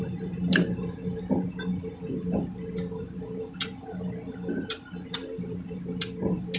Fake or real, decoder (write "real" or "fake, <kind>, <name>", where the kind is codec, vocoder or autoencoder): real